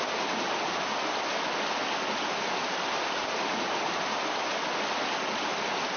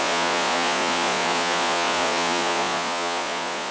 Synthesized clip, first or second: second